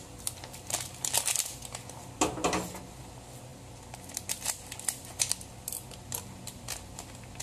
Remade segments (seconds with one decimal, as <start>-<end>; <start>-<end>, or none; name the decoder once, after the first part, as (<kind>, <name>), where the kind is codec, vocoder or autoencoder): none